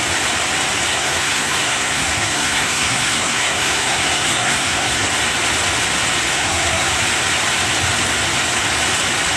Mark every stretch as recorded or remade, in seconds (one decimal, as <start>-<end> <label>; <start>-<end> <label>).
0.0-0.9 recorded; 0.9-5.1 remade; 5.1-6.3 recorded; 6.3-6.9 remade; 6.9-9.4 recorded